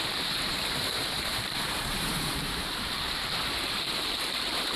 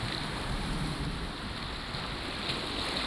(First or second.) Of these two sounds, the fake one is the first